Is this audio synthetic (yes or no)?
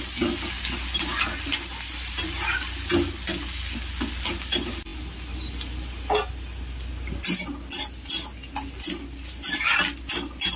no